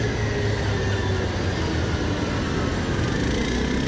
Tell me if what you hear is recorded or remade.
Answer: recorded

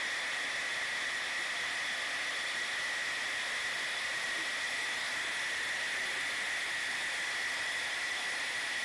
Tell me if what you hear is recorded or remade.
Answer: recorded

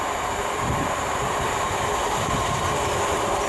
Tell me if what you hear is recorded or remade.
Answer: remade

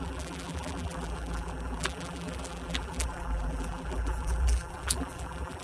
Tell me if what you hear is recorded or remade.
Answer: remade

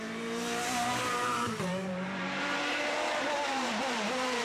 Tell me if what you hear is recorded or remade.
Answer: remade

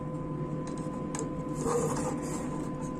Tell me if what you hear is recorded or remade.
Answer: recorded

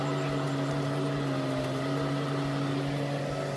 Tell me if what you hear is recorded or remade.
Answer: recorded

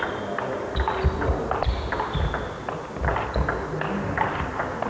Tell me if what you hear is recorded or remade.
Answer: recorded